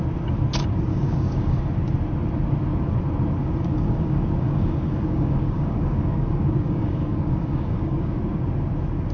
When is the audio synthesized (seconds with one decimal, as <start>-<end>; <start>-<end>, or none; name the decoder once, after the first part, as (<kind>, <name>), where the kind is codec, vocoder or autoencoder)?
0.9-1.6 (codec, DAC); 3.4-8.2